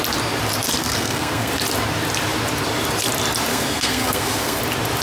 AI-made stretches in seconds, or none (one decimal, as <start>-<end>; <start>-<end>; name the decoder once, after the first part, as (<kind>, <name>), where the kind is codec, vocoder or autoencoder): 0.8-1.5 (codec, SNAC); 3.5-4.6